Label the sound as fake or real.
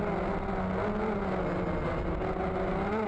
real